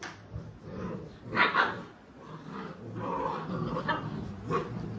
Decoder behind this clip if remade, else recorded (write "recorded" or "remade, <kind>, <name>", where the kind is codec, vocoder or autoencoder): recorded